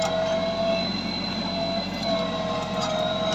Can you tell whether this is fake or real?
real